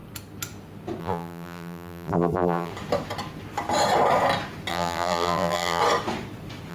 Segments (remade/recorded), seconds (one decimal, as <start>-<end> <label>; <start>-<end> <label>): 0.0-1.0 recorded; 1.0-2.7 remade; 2.7-4.7 recorded; 4.7-5.8 remade; 5.8-6.7 recorded